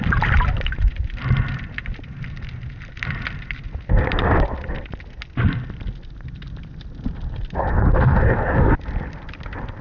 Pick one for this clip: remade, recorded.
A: recorded